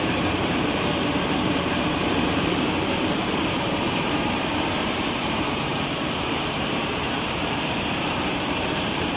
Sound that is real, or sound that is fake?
fake